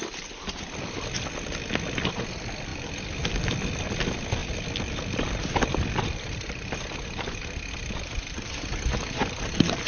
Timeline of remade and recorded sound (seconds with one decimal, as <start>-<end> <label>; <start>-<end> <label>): 0.0-4.4 recorded; 4.4-7.4 remade; 7.4-9.9 recorded